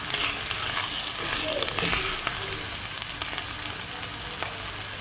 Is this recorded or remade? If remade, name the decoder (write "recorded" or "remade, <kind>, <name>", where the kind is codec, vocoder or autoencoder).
recorded